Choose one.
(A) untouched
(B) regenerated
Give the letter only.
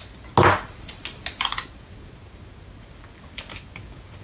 A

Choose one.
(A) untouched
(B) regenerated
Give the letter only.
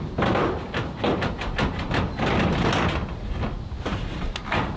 A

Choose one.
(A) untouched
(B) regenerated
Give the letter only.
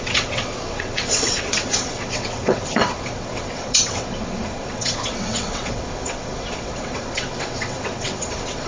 B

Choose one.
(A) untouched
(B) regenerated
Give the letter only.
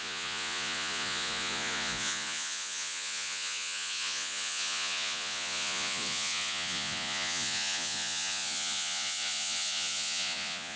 B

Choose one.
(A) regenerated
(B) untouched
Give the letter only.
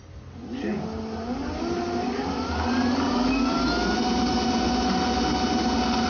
B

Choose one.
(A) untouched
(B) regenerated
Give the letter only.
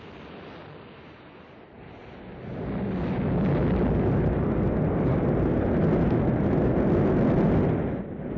A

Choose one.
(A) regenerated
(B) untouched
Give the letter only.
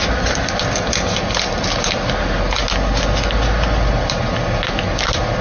B